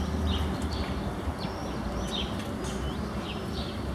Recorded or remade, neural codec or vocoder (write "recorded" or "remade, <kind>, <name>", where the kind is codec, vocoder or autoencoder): recorded